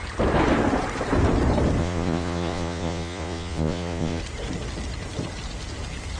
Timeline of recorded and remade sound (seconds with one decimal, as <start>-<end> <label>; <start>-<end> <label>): 0.0-1.8 recorded; 1.8-4.2 remade; 4.2-6.2 recorded